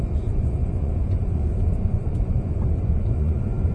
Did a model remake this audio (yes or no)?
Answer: yes